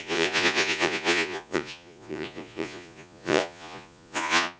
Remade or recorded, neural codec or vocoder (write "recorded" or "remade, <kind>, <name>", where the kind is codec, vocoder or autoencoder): remade, vocoder, Vocos